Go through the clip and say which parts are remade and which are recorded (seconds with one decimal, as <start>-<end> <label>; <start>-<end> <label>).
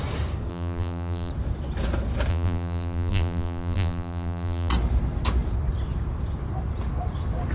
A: 0.0-0.5 recorded; 0.5-1.3 remade; 1.3-2.3 recorded; 2.3-4.7 remade; 4.7-7.5 recorded